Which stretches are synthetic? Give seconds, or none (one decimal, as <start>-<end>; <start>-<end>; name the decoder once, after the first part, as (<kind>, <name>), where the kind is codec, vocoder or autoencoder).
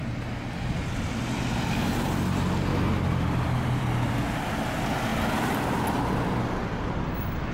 none